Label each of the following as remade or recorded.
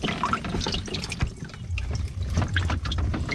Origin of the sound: recorded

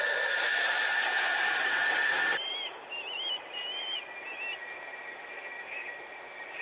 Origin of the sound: remade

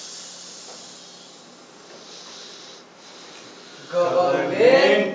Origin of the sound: recorded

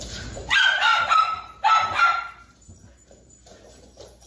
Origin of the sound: remade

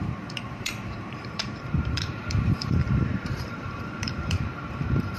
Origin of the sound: remade